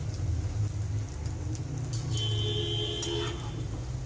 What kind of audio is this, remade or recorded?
recorded